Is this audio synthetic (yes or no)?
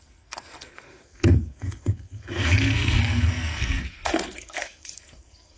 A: yes